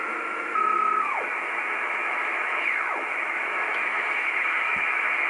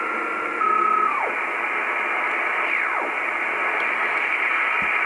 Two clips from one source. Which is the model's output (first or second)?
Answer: first